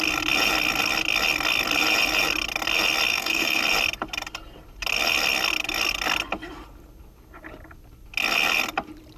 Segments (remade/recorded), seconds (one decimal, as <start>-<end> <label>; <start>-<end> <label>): 0.0-3.1 recorded; 3.1-3.6 remade; 3.6-9.2 recorded